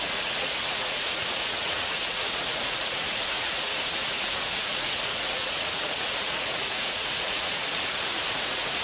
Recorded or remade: remade